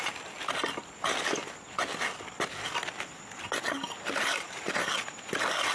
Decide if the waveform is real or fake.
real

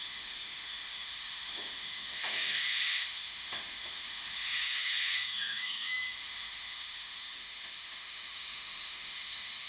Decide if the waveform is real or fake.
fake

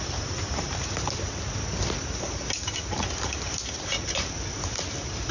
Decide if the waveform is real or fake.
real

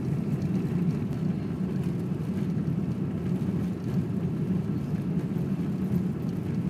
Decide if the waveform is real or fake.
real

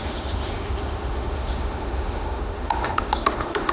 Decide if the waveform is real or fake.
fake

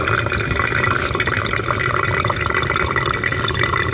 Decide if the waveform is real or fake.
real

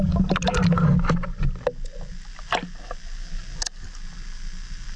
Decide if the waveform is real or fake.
real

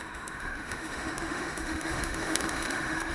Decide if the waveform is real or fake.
fake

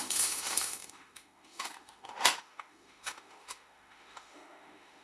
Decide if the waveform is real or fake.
fake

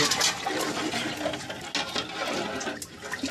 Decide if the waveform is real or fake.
real